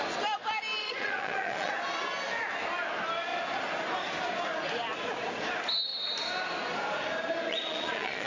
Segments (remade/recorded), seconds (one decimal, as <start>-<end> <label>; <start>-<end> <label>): 0.0-0.8 recorded; 0.8-1.7 remade; 1.7-7.5 recorded; 7.5-8.3 remade